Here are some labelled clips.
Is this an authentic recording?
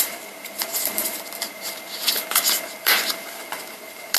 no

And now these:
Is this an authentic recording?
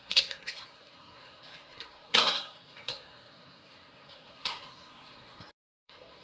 no